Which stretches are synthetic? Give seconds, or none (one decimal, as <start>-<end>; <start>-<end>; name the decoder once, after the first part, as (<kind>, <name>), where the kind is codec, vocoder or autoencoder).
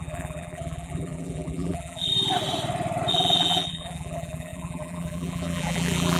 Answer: 0.0-2.1 (vocoder, BigVGAN v2); 3.1-6.2